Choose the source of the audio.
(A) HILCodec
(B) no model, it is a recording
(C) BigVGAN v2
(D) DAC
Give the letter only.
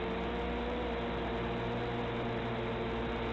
B